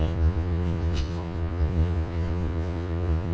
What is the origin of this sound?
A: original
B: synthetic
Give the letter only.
B